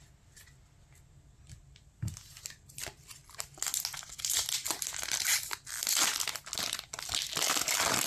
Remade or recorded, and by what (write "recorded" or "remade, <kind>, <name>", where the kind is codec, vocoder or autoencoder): recorded